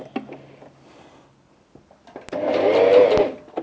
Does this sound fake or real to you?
real